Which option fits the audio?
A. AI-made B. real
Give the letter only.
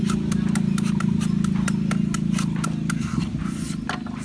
B